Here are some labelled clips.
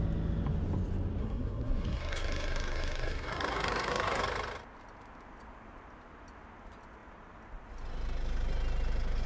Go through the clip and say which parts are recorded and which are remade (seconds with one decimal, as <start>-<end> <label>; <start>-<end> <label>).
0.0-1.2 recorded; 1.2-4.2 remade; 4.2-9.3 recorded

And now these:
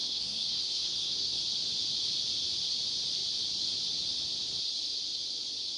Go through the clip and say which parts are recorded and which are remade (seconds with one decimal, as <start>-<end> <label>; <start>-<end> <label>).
0.0-1.4 remade; 1.4-5.8 recorded

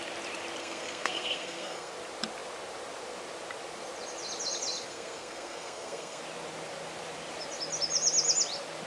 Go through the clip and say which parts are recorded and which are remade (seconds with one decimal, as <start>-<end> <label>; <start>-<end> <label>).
0.0-0.6 recorded; 0.6-1.9 remade; 1.9-4.9 recorded; 4.9-6.2 remade; 6.2-8.9 recorded

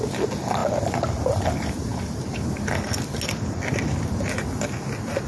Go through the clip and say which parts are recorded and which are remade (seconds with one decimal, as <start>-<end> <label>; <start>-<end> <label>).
0.0-5.3 recorded

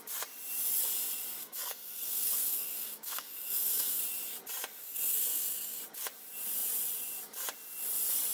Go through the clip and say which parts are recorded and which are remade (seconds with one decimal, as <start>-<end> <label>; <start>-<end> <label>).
0.0-1.4 recorded; 1.4-4.0 remade; 4.0-4.8 recorded; 4.8-5.8 remade; 5.8-8.3 recorded

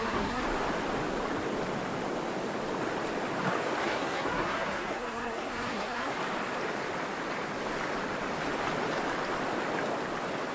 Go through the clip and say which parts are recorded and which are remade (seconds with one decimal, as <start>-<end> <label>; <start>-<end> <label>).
0.0-0.4 remade; 0.4-3.8 recorded; 3.8-6.1 remade; 6.1-10.5 recorded

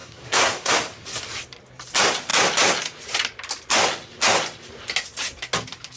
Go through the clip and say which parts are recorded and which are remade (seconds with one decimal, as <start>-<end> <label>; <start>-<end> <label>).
0.0-0.7 remade; 0.7-6.0 recorded

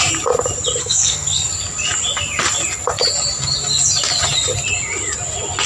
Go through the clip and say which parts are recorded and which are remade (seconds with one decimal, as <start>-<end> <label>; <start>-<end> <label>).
0.0-0.8 recorded; 0.8-1.5 remade; 1.5-5.7 recorded